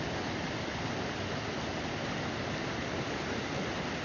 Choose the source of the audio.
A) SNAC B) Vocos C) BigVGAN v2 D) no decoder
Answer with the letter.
D